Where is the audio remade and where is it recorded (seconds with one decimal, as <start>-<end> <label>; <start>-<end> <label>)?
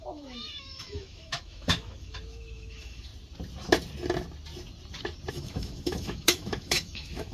0.0-3.1 remade; 3.1-5.3 recorded; 5.3-7.3 remade